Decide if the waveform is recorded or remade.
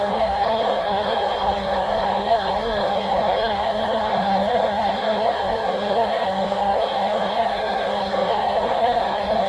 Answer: remade